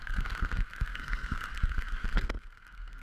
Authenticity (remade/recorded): remade